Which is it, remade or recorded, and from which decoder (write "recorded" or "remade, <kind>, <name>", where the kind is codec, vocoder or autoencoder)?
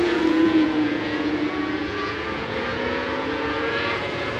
remade, vocoder, Vocos